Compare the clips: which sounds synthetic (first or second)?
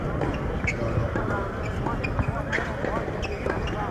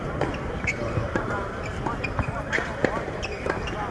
second